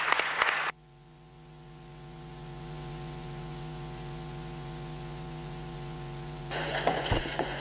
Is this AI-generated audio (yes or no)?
yes